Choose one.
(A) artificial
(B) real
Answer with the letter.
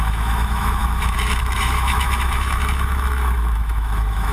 A